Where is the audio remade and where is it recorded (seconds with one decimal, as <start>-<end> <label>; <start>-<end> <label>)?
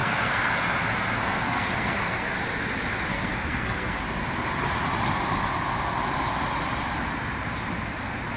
0.0-0.6 remade; 0.6-1.2 recorded; 1.2-2.4 remade; 2.4-3.1 recorded; 3.1-4.0 remade; 4.0-8.4 recorded